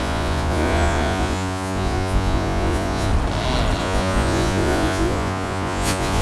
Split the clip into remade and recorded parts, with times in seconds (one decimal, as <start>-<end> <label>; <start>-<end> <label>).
0.0-3.1 remade; 3.1-3.8 recorded; 3.8-6.2 remade

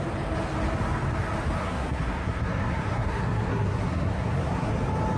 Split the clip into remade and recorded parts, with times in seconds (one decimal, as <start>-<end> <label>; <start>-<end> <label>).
0.0-1.6 recorded; 1.6-4.7 remade; 4.7-5.2 recorded

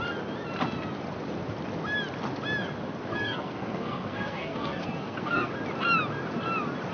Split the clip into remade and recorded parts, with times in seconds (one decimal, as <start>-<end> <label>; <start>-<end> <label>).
0.0-3.1 recorded; 3.1-5.5 remade; 5.5-6.9 recorded

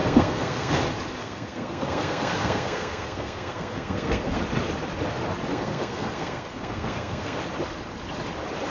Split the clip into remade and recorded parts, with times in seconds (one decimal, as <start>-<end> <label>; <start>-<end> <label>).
0.0-0.7 remade; 0.7-1.2 recorded; 1.2-4.4 remade; 4.4-5.5 recorded; 5.5-7.4 remade; 7.4-8.7 recorded

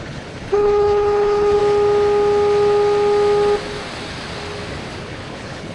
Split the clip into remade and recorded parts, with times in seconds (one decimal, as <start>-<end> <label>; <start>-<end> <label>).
0.0-1.6 remade; 1.6-5.0 recorded; 5.0-5.7 remade